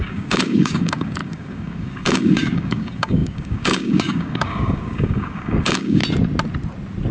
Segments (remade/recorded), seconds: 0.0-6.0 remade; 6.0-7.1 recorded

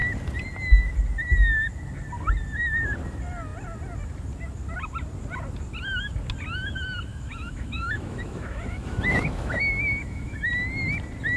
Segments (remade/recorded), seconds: 0.0-7.1 recorded; 7.1-10.5 remade; 10.5-11.4 recorded

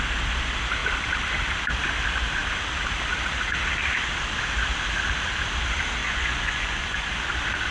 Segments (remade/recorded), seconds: 0.0-6.0 recorded; 6.0-7.1 remade; 7.1-7.7 recorded

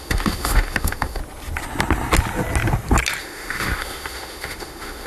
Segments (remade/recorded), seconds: 0.0-1.2 remade; 1.2-3.2 recorded; 3.2-5.1 remade

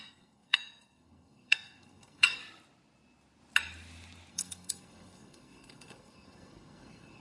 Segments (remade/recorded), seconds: 0.0-2.4 remade; 2.4-4.3 recorded; 4.3-7.2 remade